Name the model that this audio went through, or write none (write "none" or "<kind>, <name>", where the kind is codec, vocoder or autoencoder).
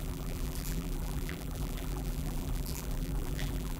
vocoder, BigVGAN v2